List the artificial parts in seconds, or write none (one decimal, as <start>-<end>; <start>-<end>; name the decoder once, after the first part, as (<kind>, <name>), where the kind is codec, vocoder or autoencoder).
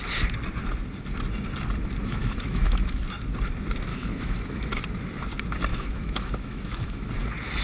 2.0-3.0 (autoencoder, DAC-VAE); 3.9-4.8; 5.7-7.1